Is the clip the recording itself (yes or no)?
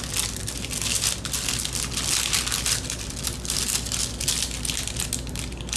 yes